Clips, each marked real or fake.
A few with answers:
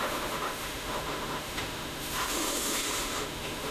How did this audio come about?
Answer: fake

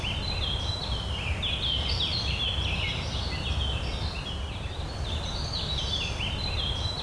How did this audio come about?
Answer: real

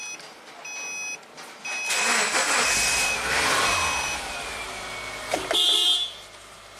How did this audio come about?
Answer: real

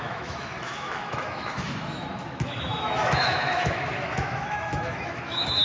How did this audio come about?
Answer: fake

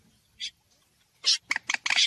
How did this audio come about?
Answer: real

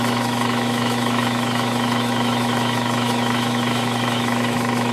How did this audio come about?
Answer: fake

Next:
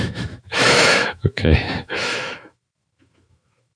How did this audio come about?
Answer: fake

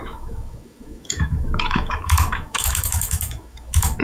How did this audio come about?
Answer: fake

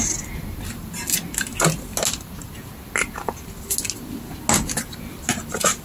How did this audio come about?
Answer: real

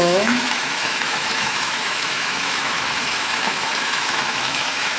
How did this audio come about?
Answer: fake